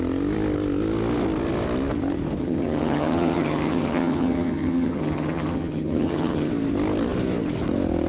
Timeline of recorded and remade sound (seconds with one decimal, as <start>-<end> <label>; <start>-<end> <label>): 0.0-2.4 recorded; 2.4-6.5 remade; 6.5-8.1 recorded

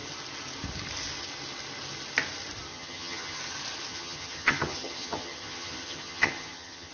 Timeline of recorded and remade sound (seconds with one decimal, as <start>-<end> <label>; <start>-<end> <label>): 0.0-2.7 recorded; 2.7-3.4 remade; 3.4-3.9 recorded; 3.9-6.9 remade

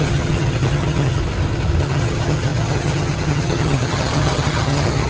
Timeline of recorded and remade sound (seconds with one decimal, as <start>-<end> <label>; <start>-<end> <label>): 0.0-1.2 remade; 1.2-1.8 recorded; 1.8-5.1 remade

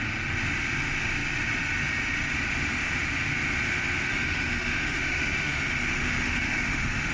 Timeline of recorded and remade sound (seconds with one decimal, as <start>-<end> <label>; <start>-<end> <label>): 0.0-4.1 recorded; 4.1-7.1 remade

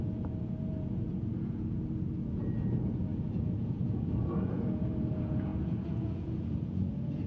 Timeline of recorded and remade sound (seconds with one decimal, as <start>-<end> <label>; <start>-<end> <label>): 0.0-7.3 remade